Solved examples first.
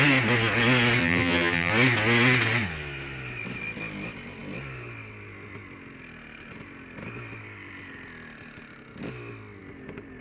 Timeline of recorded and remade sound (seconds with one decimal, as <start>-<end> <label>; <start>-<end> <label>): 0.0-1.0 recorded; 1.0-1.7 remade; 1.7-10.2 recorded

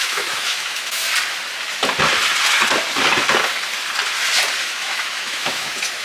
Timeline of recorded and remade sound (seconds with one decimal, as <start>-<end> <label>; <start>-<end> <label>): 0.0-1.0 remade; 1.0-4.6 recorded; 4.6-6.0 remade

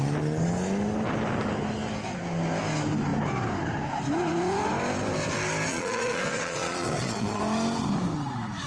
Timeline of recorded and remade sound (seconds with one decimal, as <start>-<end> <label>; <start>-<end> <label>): 0.0-5.7 recorded; 5.7-7.4 remade; 7.4-8.7 recorded

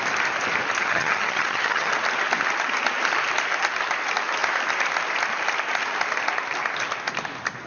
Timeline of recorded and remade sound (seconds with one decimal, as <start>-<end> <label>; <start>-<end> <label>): 0.0-0.8 recorded; 0.8-1.9 remade; 1.9-7.7 recorded

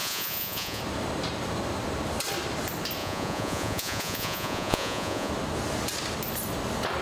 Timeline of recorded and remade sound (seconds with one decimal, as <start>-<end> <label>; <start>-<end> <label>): 0.0-0.8 remade; 0.8-3.0 recorded; 3.0-5.3 remade; 5.3-7.0 recorded

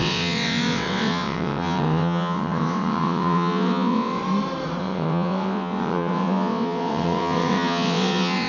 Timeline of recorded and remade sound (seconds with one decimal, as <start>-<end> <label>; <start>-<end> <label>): 0.0-4.2 remade; 4.2-4.8 recorded; 4.8-8.5 remade

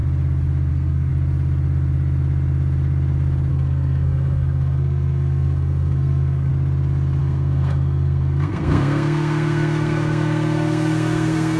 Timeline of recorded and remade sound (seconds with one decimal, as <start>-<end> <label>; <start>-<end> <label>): 0.0-0.7 recorded; 0.7-1.1 remade; 1.1-3.5 recorded; 3.5-6.5 remade; 6.5-7.2 recorded; 7.2-11.6 remade